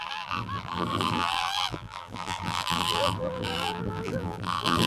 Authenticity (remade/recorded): remade